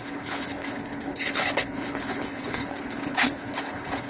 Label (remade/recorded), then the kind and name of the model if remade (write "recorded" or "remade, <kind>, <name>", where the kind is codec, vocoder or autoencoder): remade, codec, HILCodec